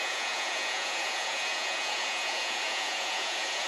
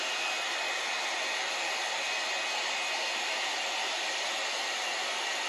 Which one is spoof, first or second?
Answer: first